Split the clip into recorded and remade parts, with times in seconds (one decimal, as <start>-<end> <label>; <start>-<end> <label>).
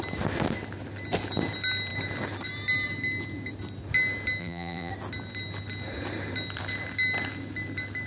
0.0-4.4 recorded; 4.4-4.9 remade; 4.9-8.1 recorded